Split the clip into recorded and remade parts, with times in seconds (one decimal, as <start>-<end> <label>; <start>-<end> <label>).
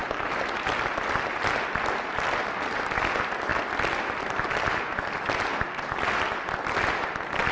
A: 0.0-7.5 recorded